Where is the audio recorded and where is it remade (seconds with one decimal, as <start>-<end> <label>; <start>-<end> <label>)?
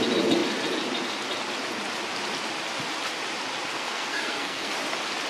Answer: 0.0-3.7 recorded; 3.7-4.7 remade; 4.7-5.3 recorded